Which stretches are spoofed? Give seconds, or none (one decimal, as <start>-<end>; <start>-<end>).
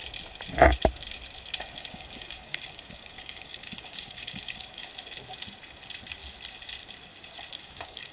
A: 1.6-4.9; 7.6-8.1